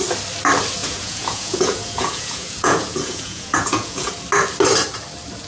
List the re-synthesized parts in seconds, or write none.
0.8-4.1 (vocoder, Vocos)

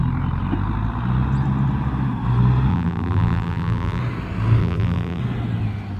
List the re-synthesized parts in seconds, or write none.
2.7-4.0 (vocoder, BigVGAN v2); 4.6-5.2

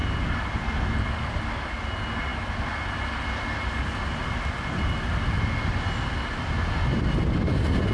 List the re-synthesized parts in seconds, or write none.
none

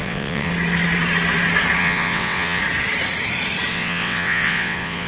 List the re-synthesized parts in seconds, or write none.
0.0-0.5 (vocoder, WaveNeXt); 1.8-2.6; 3.7-5.1